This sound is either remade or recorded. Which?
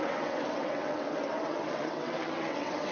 remade